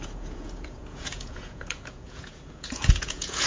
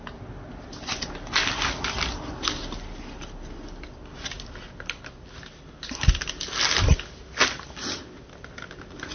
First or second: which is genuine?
second